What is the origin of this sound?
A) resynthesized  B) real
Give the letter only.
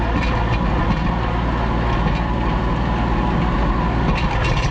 B